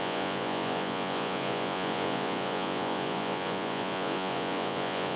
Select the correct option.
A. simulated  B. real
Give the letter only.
A